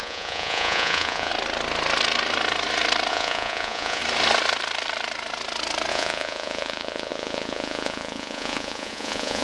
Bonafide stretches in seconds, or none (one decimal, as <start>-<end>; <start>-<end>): 1.3-3.1; 4.0-5.9